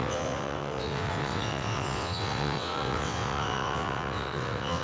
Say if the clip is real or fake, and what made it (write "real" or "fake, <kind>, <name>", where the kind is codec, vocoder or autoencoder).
fake, vocoder, WaveNeXt